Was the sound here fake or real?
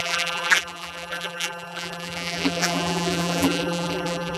fake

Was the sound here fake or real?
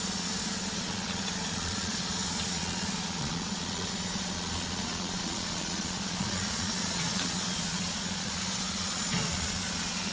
fake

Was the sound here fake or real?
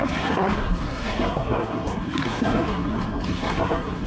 fake